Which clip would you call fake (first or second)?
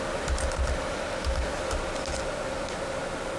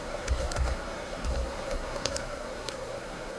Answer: second